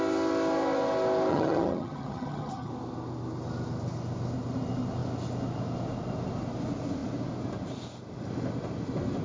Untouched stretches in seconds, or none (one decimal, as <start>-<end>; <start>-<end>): 0.0-1.3; 2.7-9.2